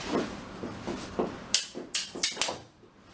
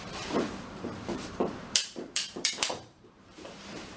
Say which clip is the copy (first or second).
second